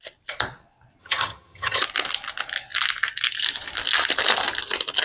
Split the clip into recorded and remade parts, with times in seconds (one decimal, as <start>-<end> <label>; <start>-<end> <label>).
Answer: 0.0-1.0 recorded; 1.0-1.8 remade; 1.8-5.0 recorded